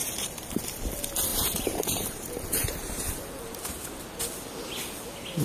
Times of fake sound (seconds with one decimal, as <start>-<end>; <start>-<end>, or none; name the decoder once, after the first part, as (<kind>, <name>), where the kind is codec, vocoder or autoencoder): 0.0-0.8 (vocoder, BigVGAN v2); 1.3-3.4